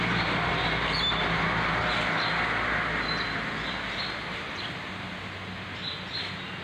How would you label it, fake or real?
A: real